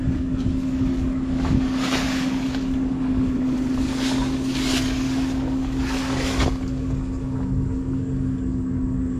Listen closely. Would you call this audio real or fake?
fake